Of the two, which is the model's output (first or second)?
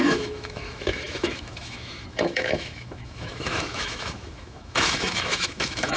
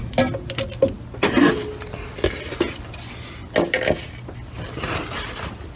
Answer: first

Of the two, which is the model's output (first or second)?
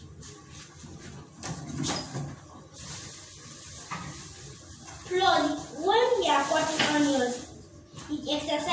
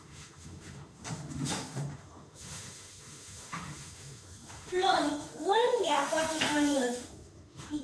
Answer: second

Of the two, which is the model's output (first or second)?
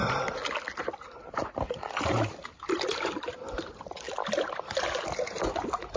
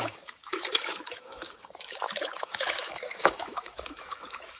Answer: second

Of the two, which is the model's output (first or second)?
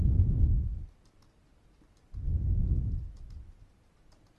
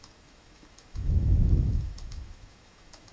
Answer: second